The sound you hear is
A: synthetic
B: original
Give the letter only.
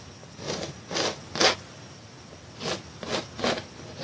B